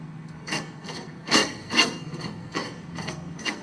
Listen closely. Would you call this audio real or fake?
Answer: fake